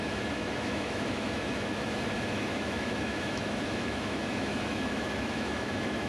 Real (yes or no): no